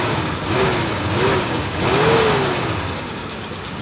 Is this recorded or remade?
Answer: remade